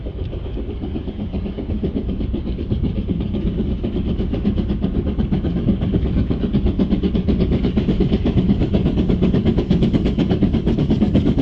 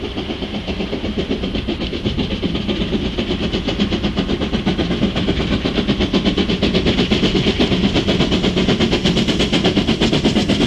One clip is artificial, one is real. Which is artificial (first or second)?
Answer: first